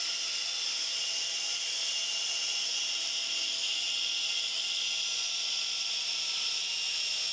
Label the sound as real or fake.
real